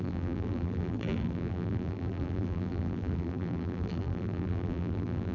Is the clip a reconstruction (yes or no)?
yes